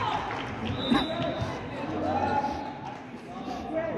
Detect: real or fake real